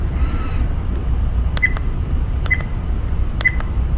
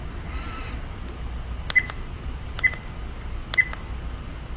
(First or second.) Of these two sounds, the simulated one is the first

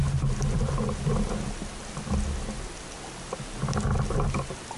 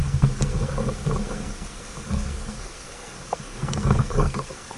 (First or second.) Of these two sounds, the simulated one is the second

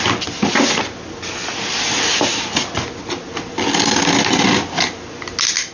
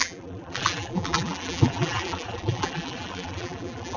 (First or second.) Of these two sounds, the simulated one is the second